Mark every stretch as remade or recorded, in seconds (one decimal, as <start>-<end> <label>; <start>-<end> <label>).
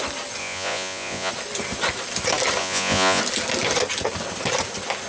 0.0-0.4 recorded; 0.4-1.3 remade; 1.3-2.6 recorded; 2.6-3.2 remade; 3.2-5.1 recorded